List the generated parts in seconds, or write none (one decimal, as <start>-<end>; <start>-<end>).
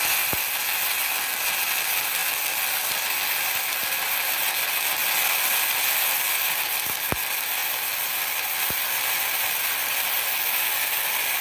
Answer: none